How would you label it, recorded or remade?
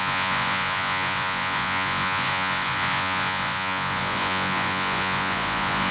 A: remade